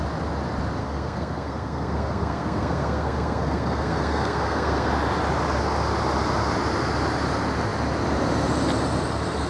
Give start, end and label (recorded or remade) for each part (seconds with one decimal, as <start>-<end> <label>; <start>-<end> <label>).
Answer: 0.0-0.8 recorded; 0.8-4.9 remade; 4.9-9.5 recorded